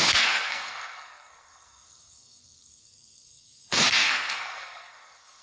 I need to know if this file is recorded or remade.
remade